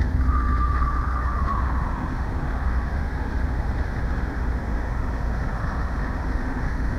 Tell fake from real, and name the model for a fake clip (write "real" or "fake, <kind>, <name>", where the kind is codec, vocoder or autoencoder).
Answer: fake, autoencoder, DAC-VAE